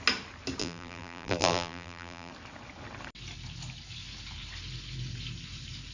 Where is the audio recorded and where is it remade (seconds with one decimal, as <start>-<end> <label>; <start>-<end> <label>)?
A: 0.0-0.6 recorded; 0.6-2.3 remade; 2.3-5.9 recorded